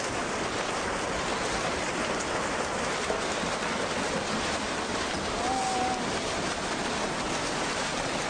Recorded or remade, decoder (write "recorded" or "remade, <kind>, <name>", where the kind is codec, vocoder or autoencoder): recorded